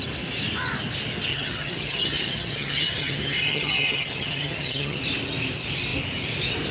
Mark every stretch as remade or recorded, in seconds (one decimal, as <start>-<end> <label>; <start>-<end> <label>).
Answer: 0.0-1.3 recorded; 1.3-5.0 remade; 5.0-6.7 recorded